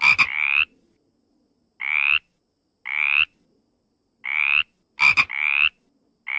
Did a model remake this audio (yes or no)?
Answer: no